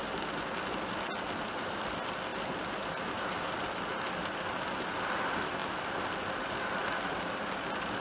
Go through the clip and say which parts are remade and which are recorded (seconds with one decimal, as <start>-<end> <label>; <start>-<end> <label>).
0.0-2.3 recorded; 2.3-3.3 remade; 3.3-5.6 recorded; 5.6-6.1 remade; 6.1-8.0 recorded